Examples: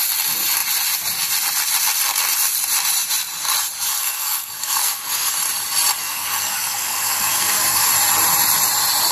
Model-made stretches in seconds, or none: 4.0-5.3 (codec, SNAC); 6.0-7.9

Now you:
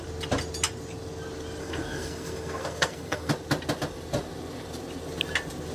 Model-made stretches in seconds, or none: 1.6-3.3 (codec, SNAC)